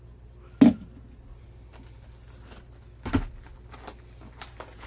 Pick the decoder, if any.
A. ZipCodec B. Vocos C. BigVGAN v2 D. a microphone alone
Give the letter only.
D